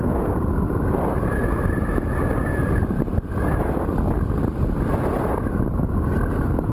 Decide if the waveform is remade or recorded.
recorded